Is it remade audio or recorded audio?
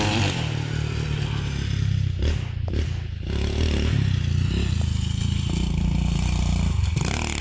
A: recorded